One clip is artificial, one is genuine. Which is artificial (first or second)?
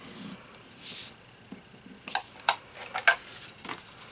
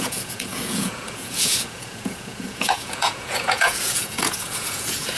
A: second